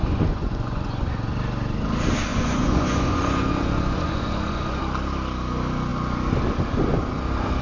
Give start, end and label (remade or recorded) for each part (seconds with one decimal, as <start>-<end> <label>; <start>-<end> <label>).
0.0-1.1 remade; 1.1-2.3 recorded; 2.3-4.8 remade; 4.8-7.6 recorded